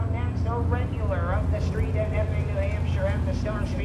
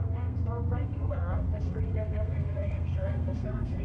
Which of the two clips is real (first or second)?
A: first